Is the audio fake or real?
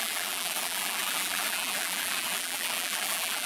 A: fake